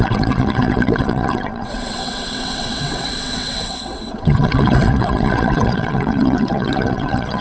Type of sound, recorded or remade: remade